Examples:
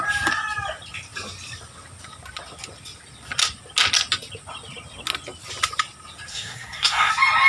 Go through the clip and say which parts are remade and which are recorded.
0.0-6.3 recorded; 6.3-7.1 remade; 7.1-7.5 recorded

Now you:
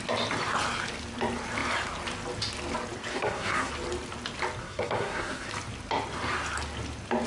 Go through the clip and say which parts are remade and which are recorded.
0.0-3.1 recorded; 3.1-3.7 remade; 3.7-4.6 recorded; 4.6-5.5 remade; 5.5-7.3 recorded